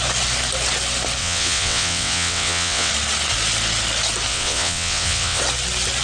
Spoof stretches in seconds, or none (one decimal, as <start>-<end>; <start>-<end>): 1.2-2.9; 4.3-5.4